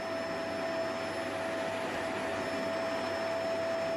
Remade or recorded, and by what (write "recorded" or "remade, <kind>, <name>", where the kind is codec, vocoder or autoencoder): recorded